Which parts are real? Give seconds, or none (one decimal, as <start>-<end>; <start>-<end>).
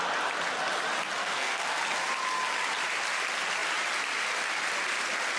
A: 0.0-1.2; 1.8-5.4